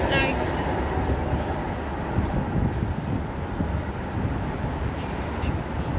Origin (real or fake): real